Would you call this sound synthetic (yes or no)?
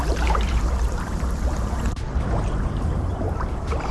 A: yes